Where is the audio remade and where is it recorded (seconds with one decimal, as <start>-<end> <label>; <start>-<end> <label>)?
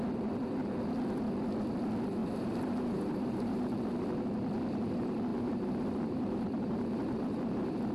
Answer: 0.0-2.2 recorded; 2.2-3.9 remade; 3.9-5.3 recorded; 5.3-7.9 remade